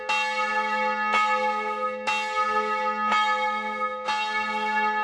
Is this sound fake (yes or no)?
no